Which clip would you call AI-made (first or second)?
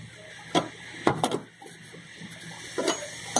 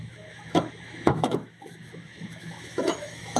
second